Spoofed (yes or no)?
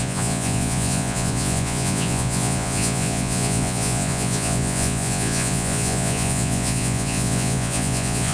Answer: yes